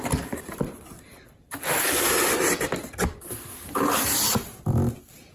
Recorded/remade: recorded